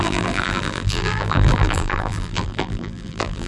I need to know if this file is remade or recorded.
remade